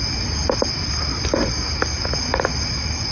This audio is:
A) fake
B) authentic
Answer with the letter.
B